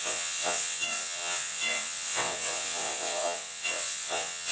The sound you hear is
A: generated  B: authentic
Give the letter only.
A